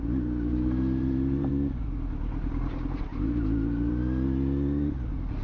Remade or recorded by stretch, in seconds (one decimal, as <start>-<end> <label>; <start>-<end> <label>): 0.0-0.5 recorded; 0.5-1.5 remade; 1.5-3.1 recorded; 3.1-3.9 remade; 3.9-5.4 recorded